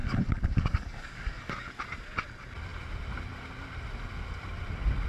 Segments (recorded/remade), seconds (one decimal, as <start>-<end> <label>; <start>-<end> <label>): 0.0-1.5 remade; 1.5-5.1 recorded